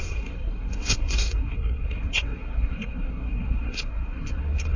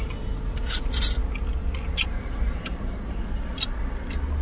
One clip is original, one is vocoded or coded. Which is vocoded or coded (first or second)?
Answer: first